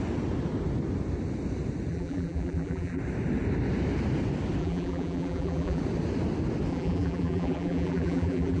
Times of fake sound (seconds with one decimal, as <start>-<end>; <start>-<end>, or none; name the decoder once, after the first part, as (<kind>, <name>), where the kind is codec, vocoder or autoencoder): 1.9-3.0 (vocoder, BigVGAN v2); 4.6-5.8; 6.7-8.6